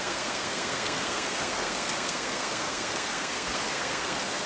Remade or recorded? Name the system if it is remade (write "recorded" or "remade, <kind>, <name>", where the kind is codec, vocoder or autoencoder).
remade, codec, SNAC